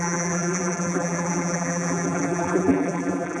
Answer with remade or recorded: remade